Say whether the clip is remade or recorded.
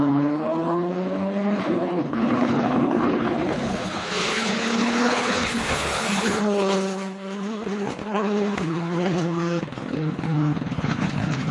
remade